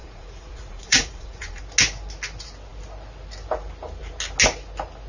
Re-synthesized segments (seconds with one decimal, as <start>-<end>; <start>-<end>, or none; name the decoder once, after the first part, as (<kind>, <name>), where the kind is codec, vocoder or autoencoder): 0.0-1.6 (vocoder, Vocos)